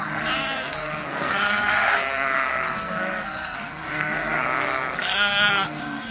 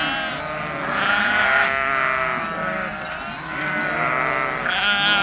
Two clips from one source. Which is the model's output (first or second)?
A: first